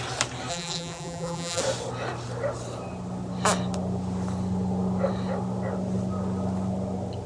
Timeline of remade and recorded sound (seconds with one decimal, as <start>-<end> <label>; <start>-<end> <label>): 0.0-0.5 recorded; 0.5-1.6 remade; 1.6-7.3 recorded